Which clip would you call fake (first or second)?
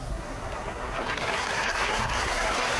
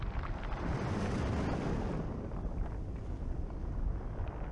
first